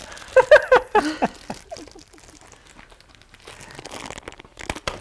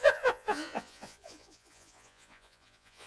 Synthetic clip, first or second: second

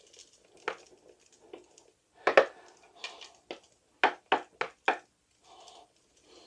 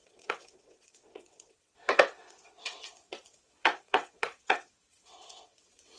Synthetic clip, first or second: second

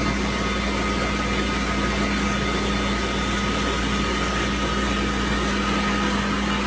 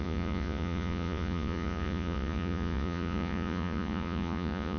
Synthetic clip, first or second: second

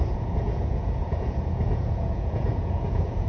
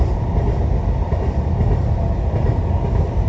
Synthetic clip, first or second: first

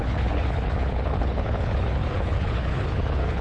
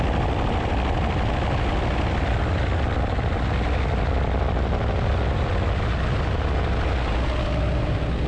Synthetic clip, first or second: first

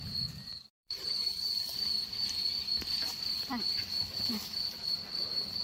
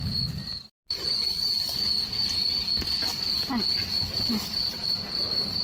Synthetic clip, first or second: first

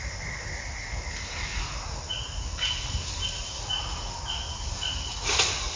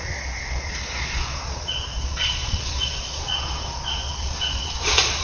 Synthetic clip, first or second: second